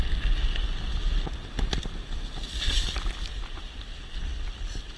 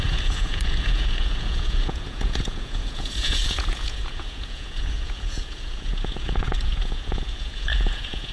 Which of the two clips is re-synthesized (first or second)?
second